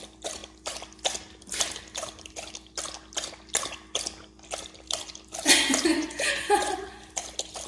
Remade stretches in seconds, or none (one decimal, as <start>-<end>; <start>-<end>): 5.9-6.7